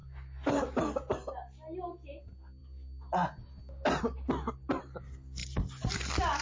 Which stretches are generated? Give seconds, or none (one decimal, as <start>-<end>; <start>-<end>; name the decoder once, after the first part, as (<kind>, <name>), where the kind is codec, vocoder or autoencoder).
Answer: none